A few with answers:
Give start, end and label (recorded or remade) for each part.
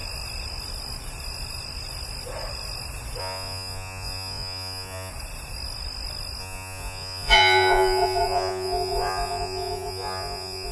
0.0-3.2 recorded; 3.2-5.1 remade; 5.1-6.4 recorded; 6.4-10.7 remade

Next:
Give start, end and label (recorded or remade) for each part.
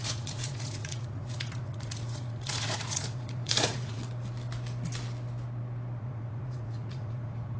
0.0-4.0 remade; 4.0-6.0 recorded; 6.0-7.6 remade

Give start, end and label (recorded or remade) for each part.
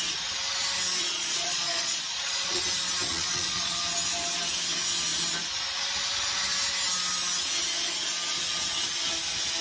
0.0-1.0 recorded; 1.0-2.6 remade; 2.6-3.1 recorded; 3.1-3.8 remade; 3.8-9.6 recorded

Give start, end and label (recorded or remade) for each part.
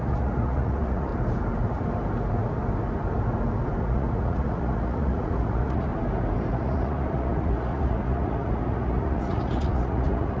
0.0-1.1 remade; 1.1-3.8 recorded; 3.8-5.9 remade; 5.9-6.5 recorded; 6.5-10.4 remade